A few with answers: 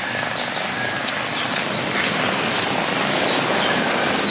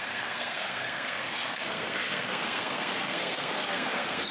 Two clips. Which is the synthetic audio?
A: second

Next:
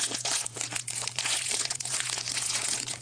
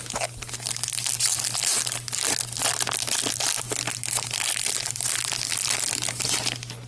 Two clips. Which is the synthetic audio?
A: first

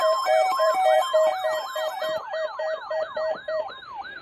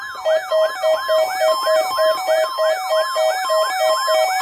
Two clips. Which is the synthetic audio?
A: first